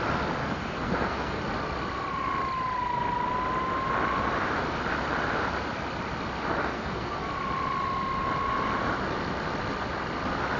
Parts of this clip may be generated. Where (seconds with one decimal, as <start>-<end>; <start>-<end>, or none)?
0.4-1.4; 6.6-7.3